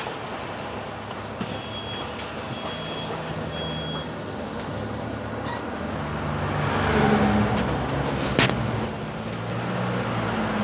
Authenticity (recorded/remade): recorded